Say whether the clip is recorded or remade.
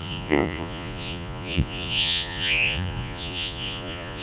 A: remade